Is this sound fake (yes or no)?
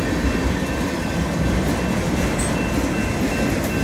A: no